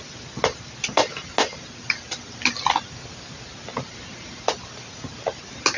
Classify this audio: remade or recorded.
recorded